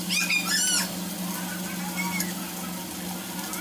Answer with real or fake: real